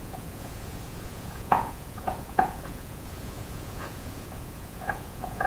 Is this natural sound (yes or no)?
no